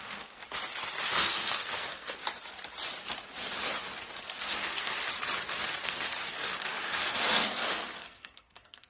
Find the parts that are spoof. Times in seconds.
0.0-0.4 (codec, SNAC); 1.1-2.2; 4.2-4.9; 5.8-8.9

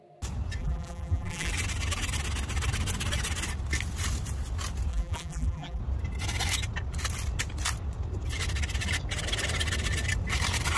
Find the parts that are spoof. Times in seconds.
0.6-1.5 (vocoder, BigVGAN v2); 4.9-5.8